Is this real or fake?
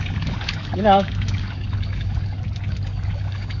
fake